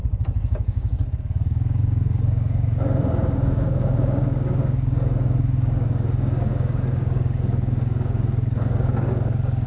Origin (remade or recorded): remade